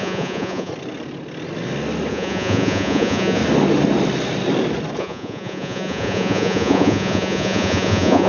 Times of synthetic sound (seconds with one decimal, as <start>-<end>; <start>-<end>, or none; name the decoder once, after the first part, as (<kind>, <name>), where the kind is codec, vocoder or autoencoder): 0.0-0.7 (vocoder, Vocos); 2.1-3.4; 5.0-8.3